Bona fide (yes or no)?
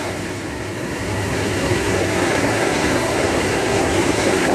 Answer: no